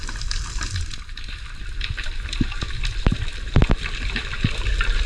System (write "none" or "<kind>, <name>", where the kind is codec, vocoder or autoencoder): none